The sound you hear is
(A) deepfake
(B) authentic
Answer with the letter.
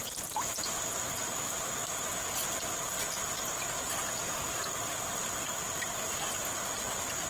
B